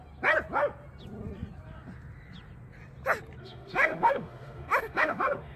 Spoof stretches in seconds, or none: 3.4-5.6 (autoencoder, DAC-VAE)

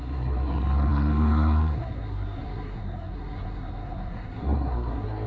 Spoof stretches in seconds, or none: 0.0-5.3 (codec, SNAC)

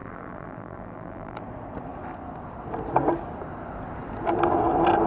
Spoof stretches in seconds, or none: 0.0-1.4 (vocoder, BigVGAN v2)